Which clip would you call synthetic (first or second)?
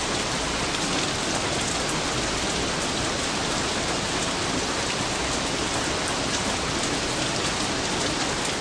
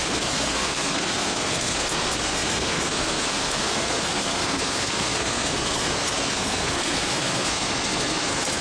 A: second